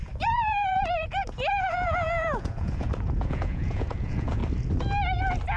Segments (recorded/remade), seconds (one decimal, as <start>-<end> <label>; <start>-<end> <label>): 0.0-4.4 remade; 4.4-5.6 recorded